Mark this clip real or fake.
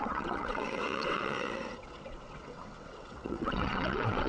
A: fake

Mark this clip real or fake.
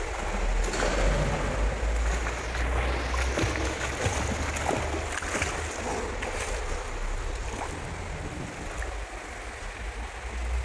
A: real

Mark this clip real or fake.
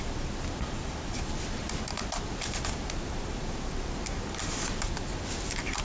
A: real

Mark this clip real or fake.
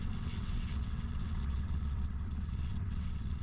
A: fake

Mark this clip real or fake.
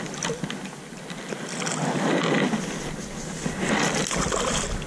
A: real